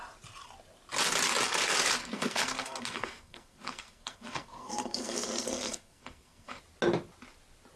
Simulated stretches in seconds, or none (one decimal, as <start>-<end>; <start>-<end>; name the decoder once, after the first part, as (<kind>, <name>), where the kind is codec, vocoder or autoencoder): 2.0-6.6 (codec, SNAC)